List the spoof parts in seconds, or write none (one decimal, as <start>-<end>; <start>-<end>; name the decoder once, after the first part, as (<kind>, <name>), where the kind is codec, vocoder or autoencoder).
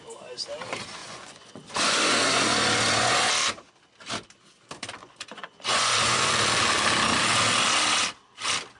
1.0-3.3 (vocoder, Vocos); 5.0-6.3